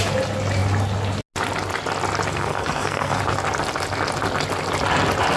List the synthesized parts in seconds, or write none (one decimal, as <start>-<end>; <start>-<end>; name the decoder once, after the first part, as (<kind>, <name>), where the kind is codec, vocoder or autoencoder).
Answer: 2.3-3.2 (codec, SNAC)